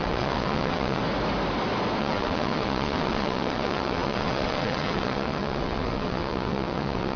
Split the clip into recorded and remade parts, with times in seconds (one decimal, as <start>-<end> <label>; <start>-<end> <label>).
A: 0.0-1.0 remade; 1.0-2.0 recorded; 2.0-7.2 remade